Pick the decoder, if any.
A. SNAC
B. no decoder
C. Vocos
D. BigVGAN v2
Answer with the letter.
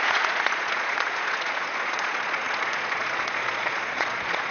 C